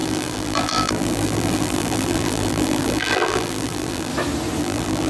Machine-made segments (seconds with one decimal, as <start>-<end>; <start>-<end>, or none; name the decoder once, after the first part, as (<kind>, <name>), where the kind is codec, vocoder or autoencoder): 0.0-4.1 (vocoder, BigVGAN v2); 4.6-5.1